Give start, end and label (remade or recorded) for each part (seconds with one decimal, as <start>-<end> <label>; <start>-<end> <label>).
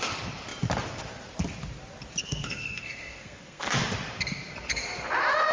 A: 0.0-2.2 recorded; 2.2-3.7 remade; 3.7-5.5 recorded